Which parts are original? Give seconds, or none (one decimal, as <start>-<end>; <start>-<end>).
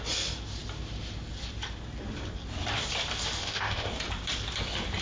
0.0-3.4; 3.9-5.0